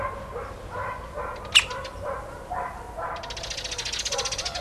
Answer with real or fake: real